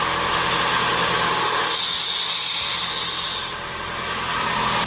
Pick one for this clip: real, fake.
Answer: real